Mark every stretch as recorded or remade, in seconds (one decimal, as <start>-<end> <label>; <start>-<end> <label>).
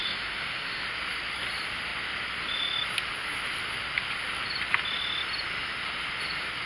0.0-0.8 remade; 0.8-6.7 recorded